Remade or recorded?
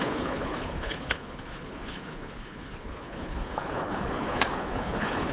remade